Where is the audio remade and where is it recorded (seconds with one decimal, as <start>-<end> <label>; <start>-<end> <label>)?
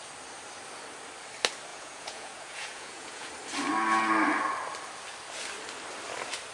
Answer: 0.0-1.7 recorded; 1.7-3.3 remade; 3.3-6.5 recorded